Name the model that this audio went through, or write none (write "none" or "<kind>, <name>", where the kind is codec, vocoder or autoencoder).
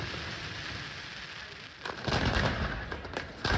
none